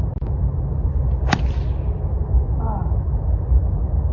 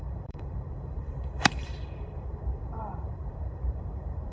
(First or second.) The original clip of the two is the first